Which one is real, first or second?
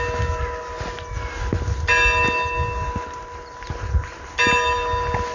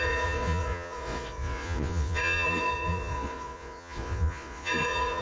first